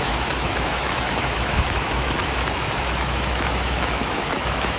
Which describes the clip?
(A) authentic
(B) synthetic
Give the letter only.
B